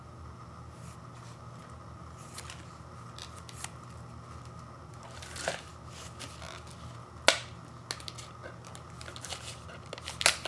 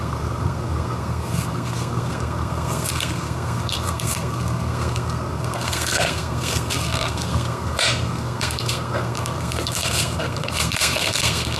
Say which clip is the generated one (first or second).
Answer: second